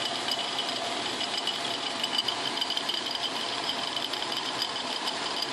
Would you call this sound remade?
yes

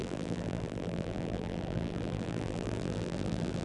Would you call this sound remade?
yes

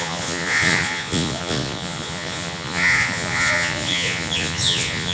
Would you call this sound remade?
yes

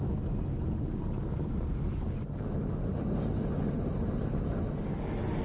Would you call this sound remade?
no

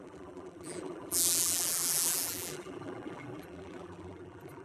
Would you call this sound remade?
yes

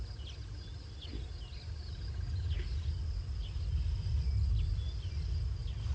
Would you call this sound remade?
no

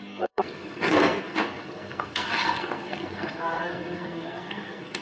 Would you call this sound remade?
yes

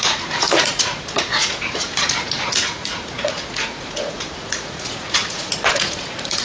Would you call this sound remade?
yes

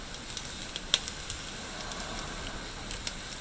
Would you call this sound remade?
no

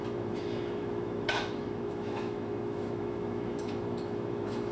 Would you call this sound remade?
yes